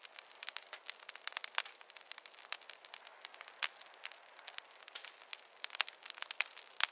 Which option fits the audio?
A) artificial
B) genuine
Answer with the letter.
B